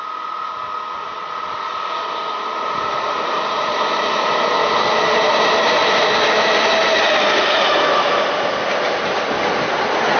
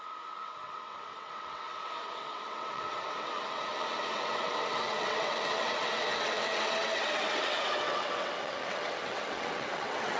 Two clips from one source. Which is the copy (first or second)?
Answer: second